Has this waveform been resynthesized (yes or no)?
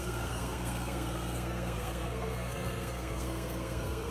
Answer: yes